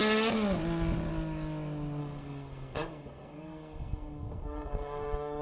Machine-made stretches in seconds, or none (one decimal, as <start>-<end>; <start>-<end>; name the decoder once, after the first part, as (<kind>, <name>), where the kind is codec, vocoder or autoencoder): 2.0-5.4 (codec, SNAC)